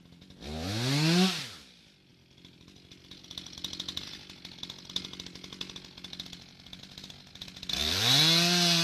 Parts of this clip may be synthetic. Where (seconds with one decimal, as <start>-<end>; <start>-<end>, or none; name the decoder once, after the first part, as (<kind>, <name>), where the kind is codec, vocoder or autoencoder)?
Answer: none